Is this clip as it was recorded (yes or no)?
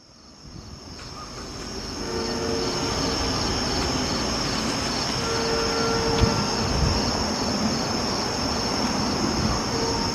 yes